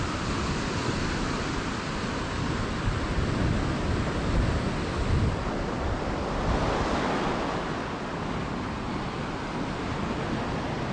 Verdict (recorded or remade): recorded